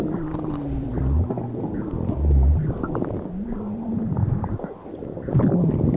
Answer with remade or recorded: recorded